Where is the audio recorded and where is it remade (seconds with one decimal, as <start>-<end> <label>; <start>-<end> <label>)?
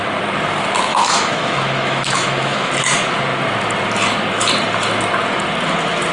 0.0-0.9 recorded; 0.9-2.7 remade; 2.7-6.1 recorded